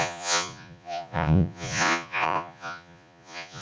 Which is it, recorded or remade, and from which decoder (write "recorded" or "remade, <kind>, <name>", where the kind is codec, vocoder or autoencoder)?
remade, vocoder, Vocos